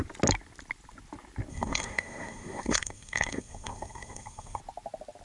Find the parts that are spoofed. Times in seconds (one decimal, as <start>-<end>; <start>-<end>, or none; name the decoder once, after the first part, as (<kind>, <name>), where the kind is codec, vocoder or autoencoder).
1.5-4.6 (codec, SNAC)